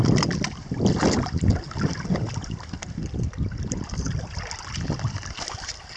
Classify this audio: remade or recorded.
recorded